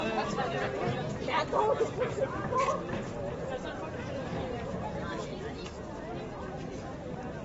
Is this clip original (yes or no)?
yes